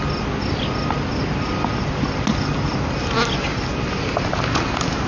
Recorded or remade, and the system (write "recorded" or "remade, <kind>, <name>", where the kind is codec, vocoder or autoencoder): recorded